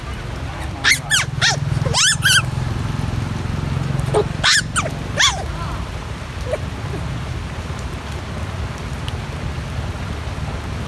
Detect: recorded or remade recorded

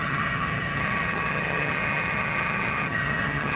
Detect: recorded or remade remade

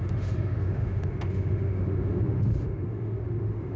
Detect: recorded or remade remade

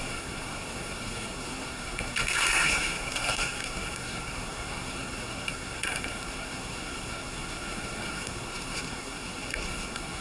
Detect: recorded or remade remade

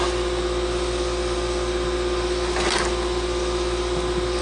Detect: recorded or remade recorded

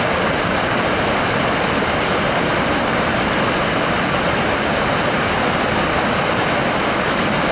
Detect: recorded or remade recorded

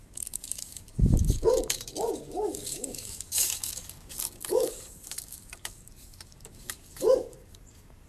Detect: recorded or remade remade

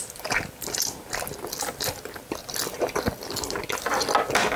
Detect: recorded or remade recorded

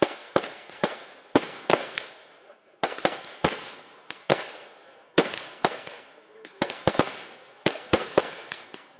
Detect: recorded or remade remade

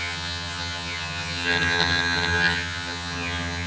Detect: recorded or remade remade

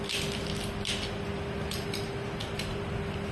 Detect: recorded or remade recorded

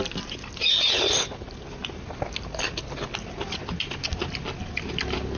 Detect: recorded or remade recorded